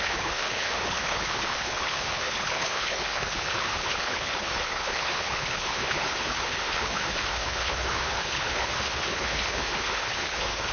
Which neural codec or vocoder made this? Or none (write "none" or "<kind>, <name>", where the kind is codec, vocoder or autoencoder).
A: codec, HILCodec